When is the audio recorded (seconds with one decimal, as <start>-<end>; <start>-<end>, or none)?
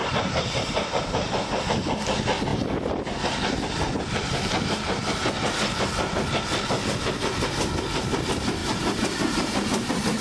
1.6-8.6